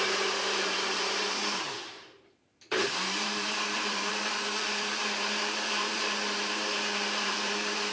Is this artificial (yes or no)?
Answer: yes